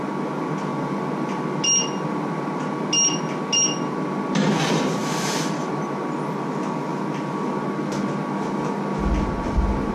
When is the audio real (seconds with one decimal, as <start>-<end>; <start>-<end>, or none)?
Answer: 0.0-5.0; 5.7-9.9